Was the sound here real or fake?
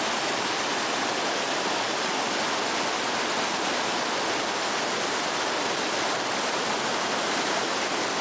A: real